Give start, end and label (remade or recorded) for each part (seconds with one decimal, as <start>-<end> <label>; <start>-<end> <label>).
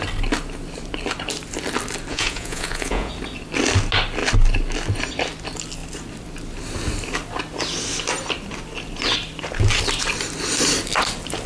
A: 0.0-2.1 recorded; 2.1-3.1 remade; 3.1-11.5 recorded